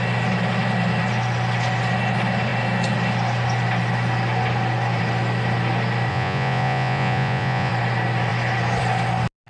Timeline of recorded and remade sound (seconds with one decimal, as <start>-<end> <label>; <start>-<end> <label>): 0.0-6.1 recorded; 6.1-7.7 remade; 7.7-9.5 recorded